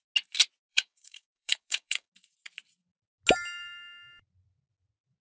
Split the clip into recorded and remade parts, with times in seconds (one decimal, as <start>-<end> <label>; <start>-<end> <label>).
0.0-0.7 recorded; 0.7-2.1 remade; 2.1-5.2 recorded